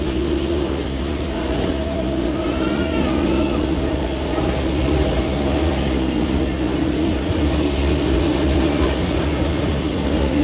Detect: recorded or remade remade